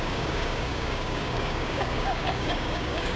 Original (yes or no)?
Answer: no